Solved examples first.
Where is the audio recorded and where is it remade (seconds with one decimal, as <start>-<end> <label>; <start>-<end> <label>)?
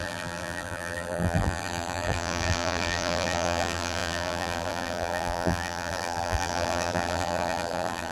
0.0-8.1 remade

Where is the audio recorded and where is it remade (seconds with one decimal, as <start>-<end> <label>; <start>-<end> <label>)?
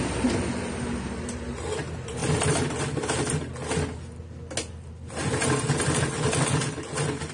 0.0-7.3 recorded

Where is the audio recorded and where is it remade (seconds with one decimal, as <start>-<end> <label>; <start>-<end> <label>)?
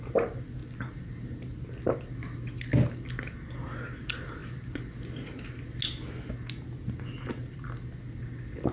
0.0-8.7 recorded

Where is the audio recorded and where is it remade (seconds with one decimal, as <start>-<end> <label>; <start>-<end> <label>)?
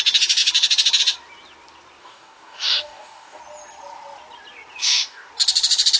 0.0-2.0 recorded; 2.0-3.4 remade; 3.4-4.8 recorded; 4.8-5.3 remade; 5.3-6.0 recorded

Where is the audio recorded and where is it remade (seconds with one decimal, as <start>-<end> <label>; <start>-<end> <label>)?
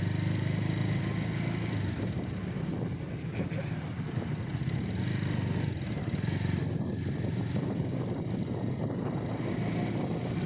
0.0-7.3 recorded; 7.3-9.5 remade; 9.5-10.5 recorded